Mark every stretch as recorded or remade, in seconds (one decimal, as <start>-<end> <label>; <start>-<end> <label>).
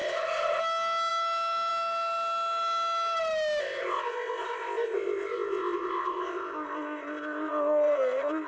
0.0-0.6 remade; 0.6-3.6 recorded; 3.6-8.5 remade